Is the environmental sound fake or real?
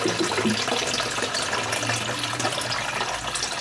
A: real